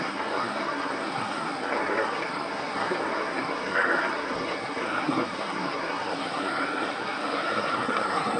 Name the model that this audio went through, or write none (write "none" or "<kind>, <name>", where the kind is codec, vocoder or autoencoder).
codec, SNAC